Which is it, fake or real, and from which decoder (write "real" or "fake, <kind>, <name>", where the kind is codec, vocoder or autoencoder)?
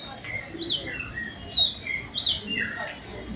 real